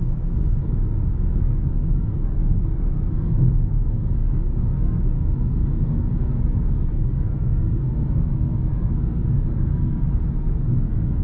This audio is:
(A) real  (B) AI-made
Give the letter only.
B